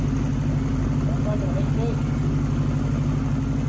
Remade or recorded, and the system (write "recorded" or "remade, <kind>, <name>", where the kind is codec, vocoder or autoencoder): recorded